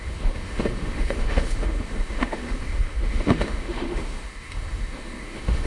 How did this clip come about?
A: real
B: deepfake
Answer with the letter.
B